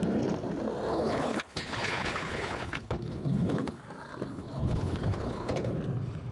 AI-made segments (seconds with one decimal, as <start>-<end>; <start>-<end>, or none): 0.9-3.8; 4.3-5.8